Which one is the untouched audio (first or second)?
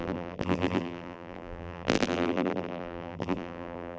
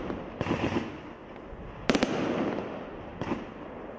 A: second